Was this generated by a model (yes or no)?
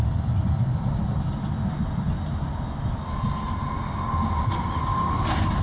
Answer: no